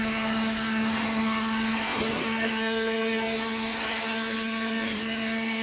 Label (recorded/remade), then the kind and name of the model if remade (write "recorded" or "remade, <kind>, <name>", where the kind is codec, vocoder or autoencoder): remade, codec, SNAC